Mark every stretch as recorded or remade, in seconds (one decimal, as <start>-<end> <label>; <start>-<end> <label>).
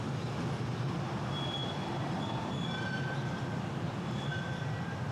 0.0-5.1 recorded